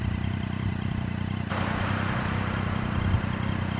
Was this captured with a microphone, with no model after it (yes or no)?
yes